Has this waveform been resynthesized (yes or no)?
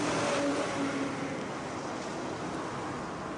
no